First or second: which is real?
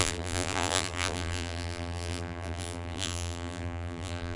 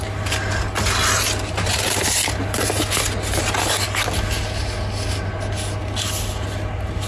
second